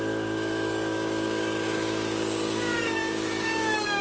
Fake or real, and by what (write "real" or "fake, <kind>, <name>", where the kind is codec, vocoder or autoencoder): fake, codec, DAC